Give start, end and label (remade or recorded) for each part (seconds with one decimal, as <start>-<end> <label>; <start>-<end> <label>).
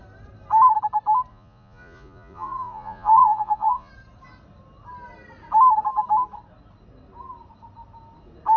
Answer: 0.0-1.3 recorded; 1.3-3.9 remade; 3.9-8.6 recorded